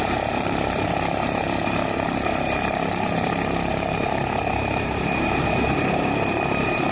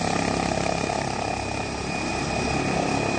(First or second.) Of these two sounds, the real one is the second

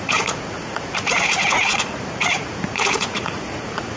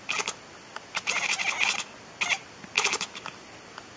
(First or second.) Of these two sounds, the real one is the second